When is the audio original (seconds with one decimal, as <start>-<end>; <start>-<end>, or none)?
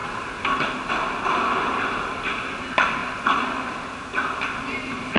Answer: 0.0-3.0; 3.7-5.2